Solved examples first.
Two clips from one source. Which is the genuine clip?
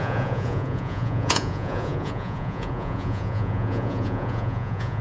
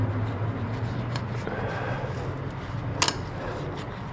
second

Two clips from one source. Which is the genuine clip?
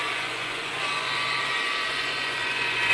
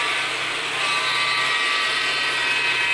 second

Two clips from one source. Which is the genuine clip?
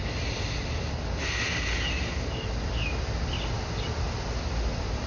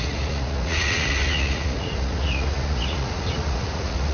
first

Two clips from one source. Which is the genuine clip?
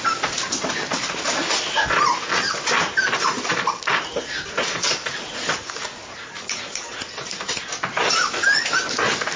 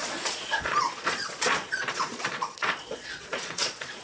first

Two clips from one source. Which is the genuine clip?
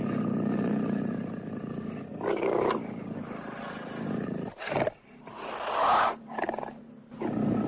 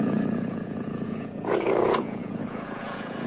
first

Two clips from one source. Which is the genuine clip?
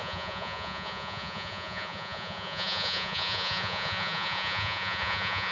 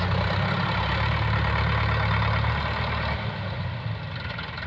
second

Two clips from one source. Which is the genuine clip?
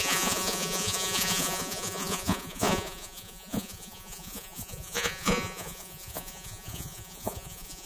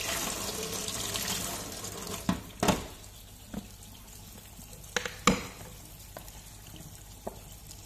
second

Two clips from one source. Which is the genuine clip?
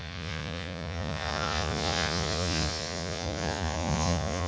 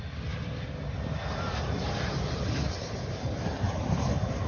second